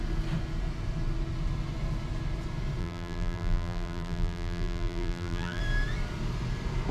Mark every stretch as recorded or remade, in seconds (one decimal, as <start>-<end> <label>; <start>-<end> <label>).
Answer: 0.0-2.8 recorded; 2.8-5.6 remade; 5.6-6.9 recorded